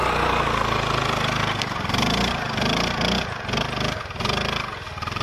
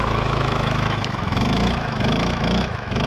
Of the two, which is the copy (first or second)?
second